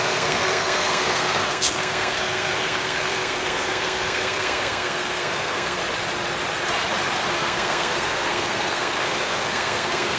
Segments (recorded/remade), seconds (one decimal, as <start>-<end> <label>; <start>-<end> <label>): 0.0-5.8 remade; 5.8-7.3 recorded; 7.3-10.2 remade